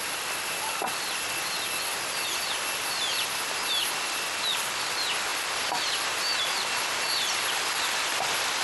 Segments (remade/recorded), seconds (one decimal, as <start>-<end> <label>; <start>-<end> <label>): 0.0-8.6 recorded